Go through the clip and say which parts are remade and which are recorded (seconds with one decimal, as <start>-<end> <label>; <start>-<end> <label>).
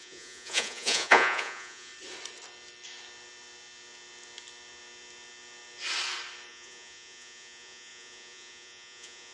0.0-1.9 remade; 1.9-6.5 recorded; 6.5-9.3 remade